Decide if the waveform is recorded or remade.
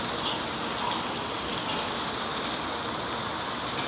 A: recorded